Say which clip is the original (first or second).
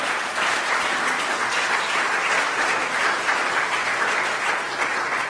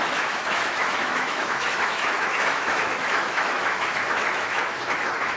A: first